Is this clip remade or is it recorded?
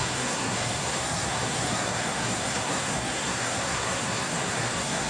remade